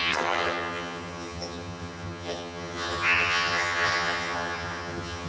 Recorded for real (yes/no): no